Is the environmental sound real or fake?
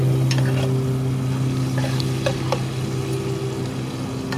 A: real